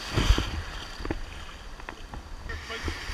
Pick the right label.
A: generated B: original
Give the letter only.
B